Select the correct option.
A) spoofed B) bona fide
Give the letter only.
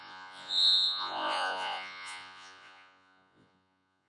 A